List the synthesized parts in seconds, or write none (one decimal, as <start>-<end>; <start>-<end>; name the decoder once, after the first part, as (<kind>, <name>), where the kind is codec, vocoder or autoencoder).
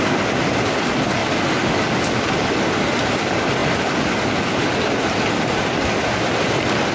none